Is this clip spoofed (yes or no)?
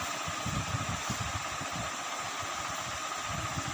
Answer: no